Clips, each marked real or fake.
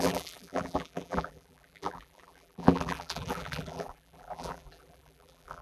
fake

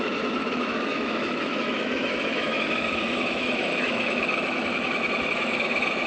fake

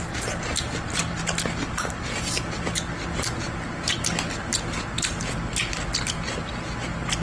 real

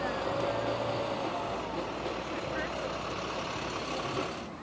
real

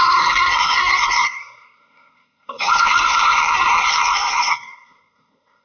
fake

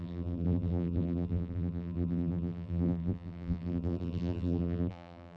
fake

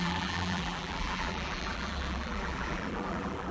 fake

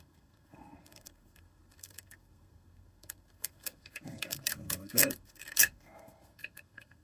fake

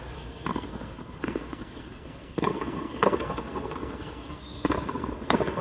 fake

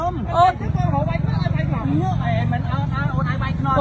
real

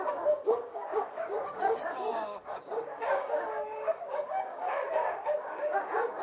fake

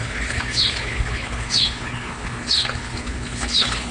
fake